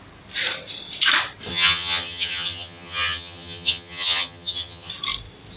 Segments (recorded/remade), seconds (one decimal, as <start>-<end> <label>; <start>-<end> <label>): 0.0-1.5 recorded; 1.5-4.9 remade; 4.9-5.6 recorded